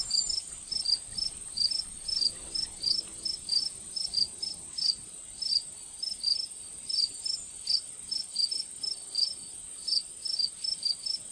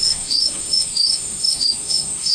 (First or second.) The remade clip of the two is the second